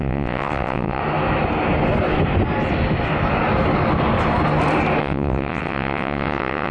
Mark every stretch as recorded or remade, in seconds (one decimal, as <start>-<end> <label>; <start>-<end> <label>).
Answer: 0.0-1.0 remade; 1.0-5.0 recorded; 5.0-6.7 remade